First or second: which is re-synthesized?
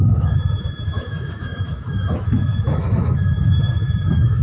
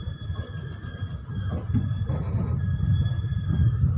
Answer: first